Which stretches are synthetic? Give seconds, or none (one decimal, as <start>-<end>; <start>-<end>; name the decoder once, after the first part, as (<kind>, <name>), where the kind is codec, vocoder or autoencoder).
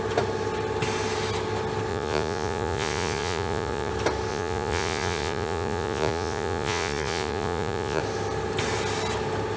1.9-3.9 (vocoder, Vocos); 4.3-8.0